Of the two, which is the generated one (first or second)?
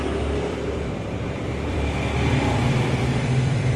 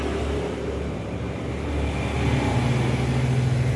first